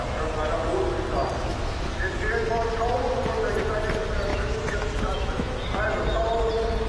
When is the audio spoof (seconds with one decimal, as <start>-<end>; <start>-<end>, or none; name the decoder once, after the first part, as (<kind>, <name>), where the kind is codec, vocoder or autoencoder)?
1.5-2.5 (autoencoder, DAC-VAE); 4.3-5.8